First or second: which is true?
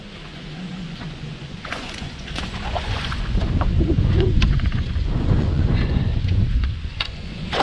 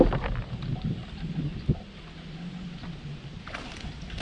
second